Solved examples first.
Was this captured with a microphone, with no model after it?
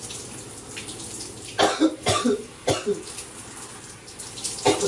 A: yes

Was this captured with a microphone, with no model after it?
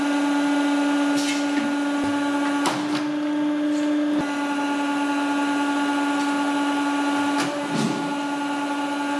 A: yes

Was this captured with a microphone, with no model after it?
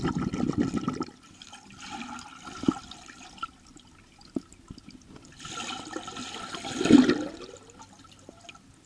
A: yes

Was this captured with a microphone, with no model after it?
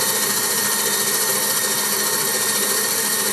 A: yes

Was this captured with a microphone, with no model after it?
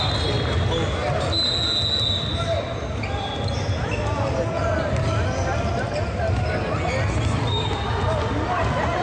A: yes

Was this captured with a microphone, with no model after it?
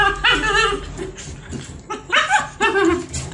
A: yes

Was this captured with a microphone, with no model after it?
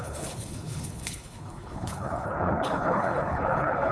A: no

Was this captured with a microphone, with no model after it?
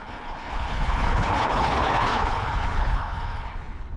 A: no